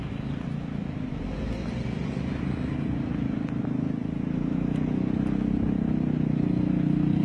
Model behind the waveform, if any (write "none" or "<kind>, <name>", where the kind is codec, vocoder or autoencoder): none